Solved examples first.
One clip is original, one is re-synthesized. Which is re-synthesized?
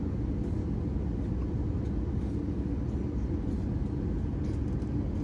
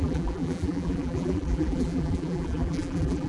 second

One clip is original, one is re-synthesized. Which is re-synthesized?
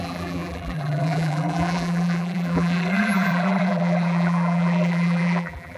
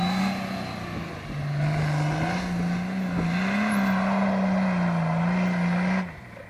first